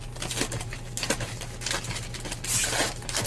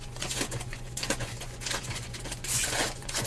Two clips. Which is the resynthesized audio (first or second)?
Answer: second